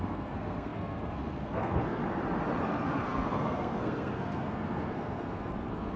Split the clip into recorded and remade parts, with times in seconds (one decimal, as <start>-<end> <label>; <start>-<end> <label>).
0.0-2.0 remade; 2.0-2.6 recorded; 2.6-6.0 remade